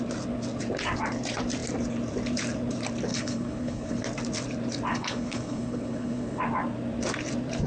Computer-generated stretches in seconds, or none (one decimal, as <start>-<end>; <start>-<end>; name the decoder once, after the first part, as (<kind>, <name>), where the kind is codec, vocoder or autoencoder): 3.1-4.0 (codec, HILCodec); 4.9-6.4